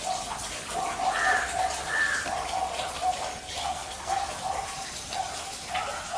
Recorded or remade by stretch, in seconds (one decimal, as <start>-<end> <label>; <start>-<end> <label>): 0.0-3.6 recorded; 3.6-4.2 remade; 4.2-6.2 recorded